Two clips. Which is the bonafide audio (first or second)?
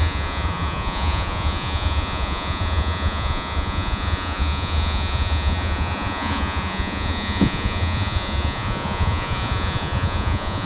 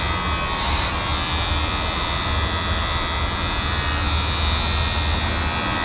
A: second